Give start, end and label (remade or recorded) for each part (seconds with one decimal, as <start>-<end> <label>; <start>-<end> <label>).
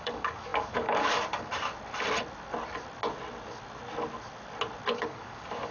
0.0-1.5 remade; 1.5-4.9 recorded; 4.9-5.7 remade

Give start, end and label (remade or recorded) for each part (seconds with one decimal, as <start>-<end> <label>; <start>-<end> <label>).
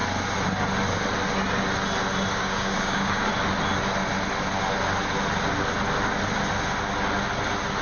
0.0-2.3 recorded; 2.3-3.3 remade; 3.3-7.8 recorded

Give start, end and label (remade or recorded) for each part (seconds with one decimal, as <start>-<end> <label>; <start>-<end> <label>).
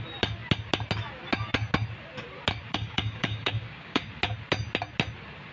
0.0-2.7 recorded; 2.7-4.0 remade; 4.0-5.5 recorded